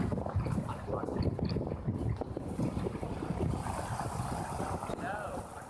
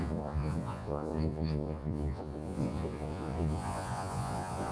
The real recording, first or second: first